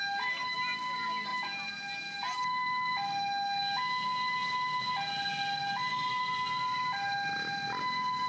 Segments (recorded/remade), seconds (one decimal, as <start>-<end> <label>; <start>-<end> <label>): 0.0-8.3 recorded